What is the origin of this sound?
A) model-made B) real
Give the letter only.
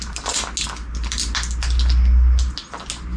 B